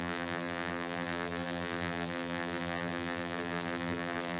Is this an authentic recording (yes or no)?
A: no